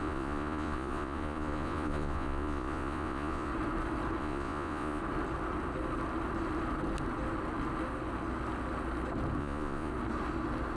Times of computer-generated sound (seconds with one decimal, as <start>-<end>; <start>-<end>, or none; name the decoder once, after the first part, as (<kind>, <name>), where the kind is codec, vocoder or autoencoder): 0.0-3.5 (vocoder, Vocos); 4.2-5.0; 9.4-9.9